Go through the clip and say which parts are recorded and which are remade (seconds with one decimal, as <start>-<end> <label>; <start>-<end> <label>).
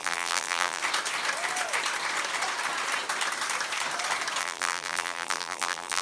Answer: 0.0-0.8 remade; 0.8-4.4 recorded; 4.4-6.0 remade